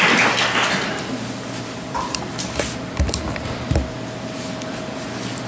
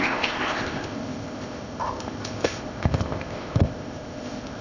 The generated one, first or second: second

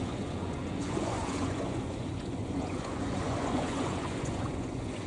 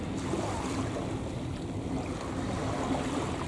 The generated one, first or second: first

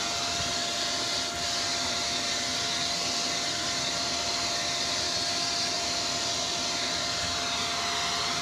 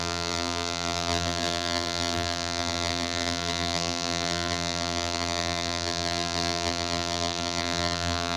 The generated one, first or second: second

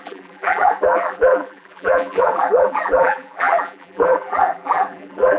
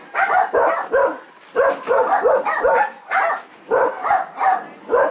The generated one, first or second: first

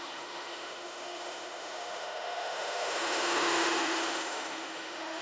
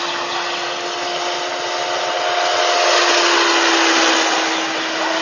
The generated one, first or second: first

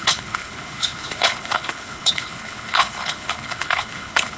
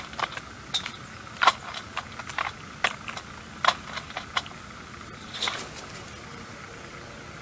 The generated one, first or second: first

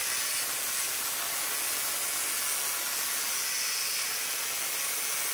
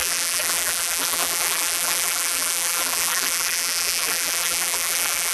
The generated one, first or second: second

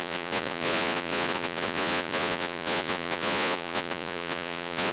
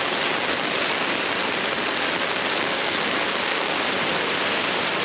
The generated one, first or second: first